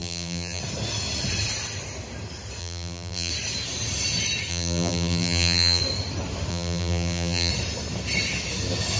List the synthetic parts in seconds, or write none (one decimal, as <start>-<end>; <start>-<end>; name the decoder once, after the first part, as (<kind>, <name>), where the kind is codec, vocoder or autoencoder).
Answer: 0.0-0.6 (vocoder, BigVGAN v2); 2.6-3.3; 4.5-5.8; 6.5-7.5